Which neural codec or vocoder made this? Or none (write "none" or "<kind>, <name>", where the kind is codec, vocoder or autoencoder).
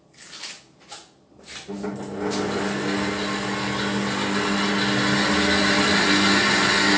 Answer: none